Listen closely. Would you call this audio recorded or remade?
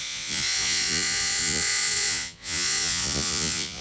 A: remade